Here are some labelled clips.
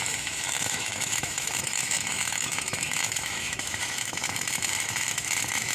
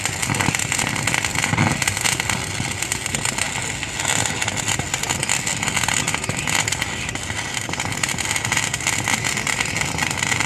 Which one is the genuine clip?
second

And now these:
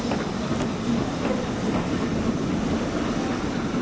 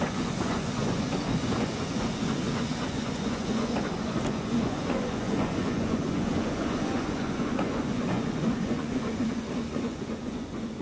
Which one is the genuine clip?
first